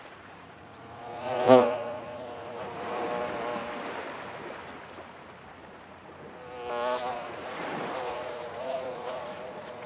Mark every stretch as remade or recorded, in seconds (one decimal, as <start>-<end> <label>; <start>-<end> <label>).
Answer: 0.0-3.1 remade; 3.1-7.1 recorded; 7.1-9.9 remade